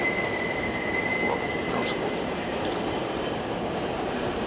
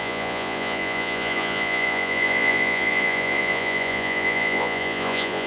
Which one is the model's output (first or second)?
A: second